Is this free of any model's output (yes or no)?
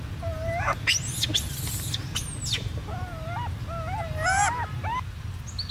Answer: yes